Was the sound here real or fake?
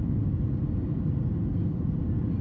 real